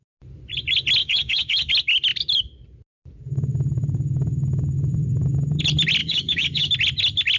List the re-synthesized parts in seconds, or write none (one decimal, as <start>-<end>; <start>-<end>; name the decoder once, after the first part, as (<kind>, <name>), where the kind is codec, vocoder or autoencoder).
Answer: 1.0-1.7 (codec, DAC); 6.0-6.7